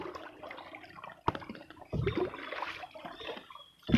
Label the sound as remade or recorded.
recorded